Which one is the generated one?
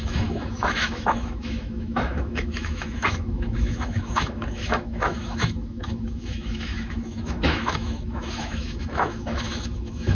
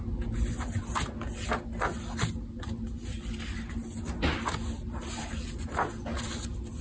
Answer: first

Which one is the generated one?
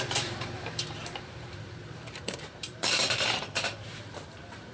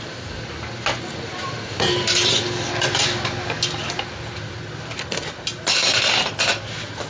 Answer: first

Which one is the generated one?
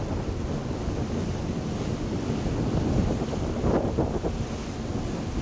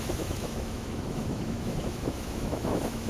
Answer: second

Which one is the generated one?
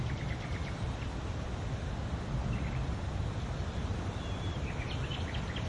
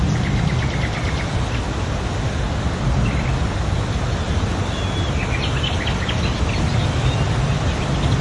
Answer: first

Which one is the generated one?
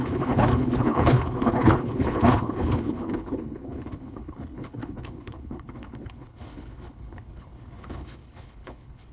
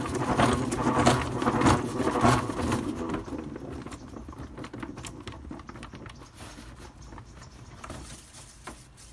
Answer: first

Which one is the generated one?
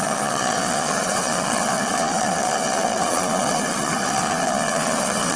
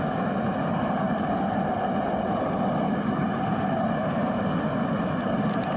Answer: first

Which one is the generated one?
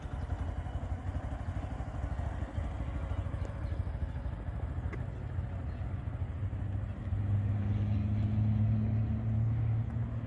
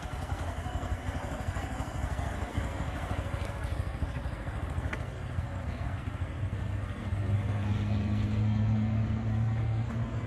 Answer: second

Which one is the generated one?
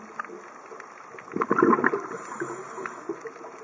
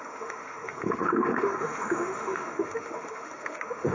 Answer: second